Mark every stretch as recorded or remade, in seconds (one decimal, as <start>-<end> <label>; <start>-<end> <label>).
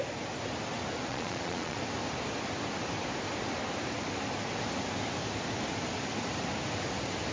0.0-1.1 recorded; 1.1-1.8 remade; 1.8-7.3 recorded